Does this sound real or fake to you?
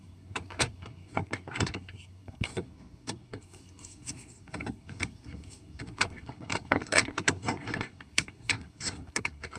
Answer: fake